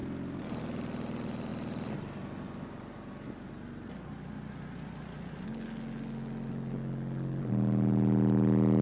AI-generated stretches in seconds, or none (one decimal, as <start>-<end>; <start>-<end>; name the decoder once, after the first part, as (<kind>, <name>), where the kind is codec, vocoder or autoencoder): none

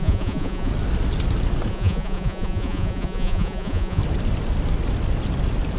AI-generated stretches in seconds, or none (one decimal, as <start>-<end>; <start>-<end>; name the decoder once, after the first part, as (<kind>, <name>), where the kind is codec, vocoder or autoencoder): 0.0-0.7 (vocoder, Vocos); 1.7-4.0

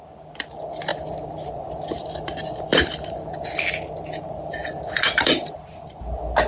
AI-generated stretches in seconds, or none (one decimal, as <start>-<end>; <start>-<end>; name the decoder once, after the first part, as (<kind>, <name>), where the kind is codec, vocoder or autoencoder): 0.9-3.2 (vocoder, BigVGAN v2); 4.6-5.6

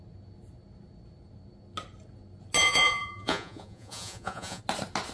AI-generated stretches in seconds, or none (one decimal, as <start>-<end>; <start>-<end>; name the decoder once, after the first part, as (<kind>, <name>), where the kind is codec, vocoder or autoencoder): 2.6-4.6 (vocoder, Vocos)

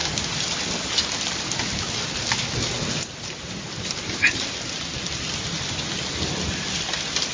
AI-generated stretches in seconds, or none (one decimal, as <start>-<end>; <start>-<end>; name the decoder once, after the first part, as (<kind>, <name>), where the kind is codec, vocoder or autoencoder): none